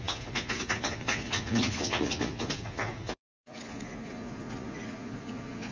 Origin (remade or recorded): remade